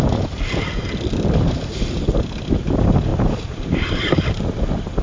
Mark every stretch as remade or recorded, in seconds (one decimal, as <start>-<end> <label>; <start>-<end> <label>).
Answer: 0.0-5.0 recorded